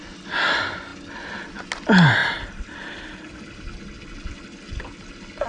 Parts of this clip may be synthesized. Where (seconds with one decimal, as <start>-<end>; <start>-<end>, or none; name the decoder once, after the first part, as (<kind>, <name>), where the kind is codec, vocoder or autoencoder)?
none